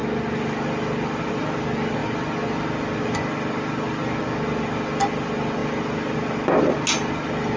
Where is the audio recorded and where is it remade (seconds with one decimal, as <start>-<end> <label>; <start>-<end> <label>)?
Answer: 0.0-7.6 recorded